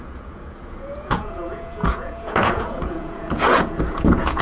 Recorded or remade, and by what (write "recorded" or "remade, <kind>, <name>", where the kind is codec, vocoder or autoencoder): remade, vocoder, Vocos